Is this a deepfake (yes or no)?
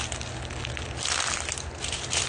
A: no